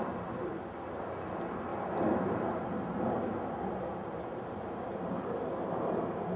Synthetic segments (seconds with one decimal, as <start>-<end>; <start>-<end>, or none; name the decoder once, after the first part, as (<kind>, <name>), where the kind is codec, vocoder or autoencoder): none

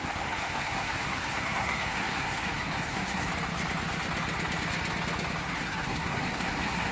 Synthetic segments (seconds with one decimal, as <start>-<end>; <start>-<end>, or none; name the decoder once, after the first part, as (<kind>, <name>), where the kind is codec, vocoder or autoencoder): 0.0-3.3 (codec, SNAC); 5.4-6.9

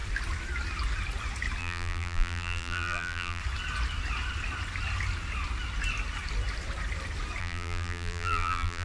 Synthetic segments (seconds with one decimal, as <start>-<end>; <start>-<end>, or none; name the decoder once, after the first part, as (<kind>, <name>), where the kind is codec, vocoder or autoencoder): 1.6-3.4 (vocoder, BigVGAN v2); 7.4-8.8

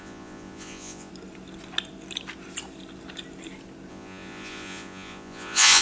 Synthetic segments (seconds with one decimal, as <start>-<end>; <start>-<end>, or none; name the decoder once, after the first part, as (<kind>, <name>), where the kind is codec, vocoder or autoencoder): 0.0-1.1 (vocoder, Vocos); 3.9-5.8

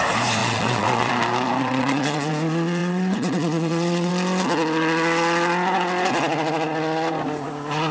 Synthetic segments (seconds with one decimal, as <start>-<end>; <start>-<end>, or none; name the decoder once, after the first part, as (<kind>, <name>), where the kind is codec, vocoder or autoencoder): 0.4-1.1 (vocoder, WaveNeXt); 1.6-2.3; 2.8-4.1

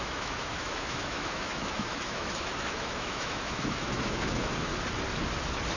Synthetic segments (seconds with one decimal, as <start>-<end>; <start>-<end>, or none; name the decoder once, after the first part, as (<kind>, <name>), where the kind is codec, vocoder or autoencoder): 0.0-4.7 (autoencoder, DAC-VAE)

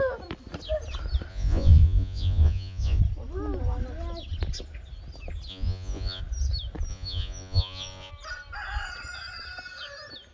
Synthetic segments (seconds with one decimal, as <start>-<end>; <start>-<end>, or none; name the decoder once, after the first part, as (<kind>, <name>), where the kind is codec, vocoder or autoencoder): 1.3-3.0 (vocoder, Vocos); 5.5-6.2; 6.9-8.1